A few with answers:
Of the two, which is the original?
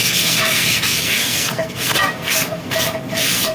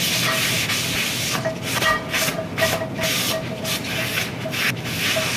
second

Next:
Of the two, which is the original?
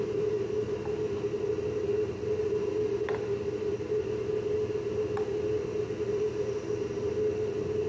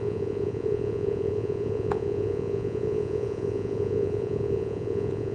first